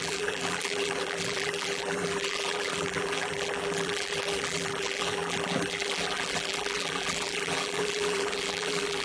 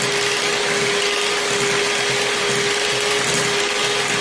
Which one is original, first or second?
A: second